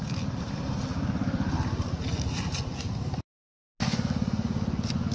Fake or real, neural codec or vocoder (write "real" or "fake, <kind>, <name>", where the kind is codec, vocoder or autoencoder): real